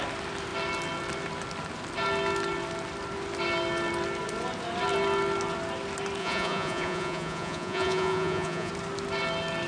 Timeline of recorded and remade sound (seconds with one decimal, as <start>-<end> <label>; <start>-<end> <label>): 0.0-6.2 recorded; 6.2-8.7 remade; 8.7-9.7 recorded